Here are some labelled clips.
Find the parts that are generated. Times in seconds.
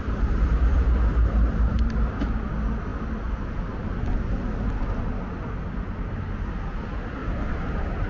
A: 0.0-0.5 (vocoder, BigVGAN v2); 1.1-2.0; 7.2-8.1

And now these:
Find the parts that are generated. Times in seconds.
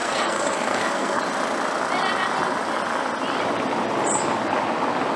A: 0.0-1.2 (codec, SNAC)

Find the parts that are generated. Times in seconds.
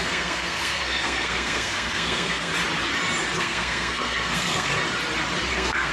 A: 0.0-2.5 (codec, SNAC); 3.4-4.7; 5.5-5.9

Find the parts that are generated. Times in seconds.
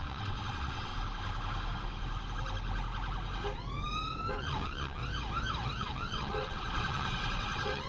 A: 0.0-0.9 (vocoder, WaveNeXt); 4.3-5.0; 5.8-7.9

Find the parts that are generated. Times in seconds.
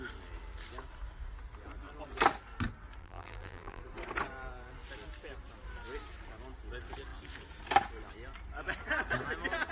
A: 3.0-3.8 (vocoder, BigVGAN v2)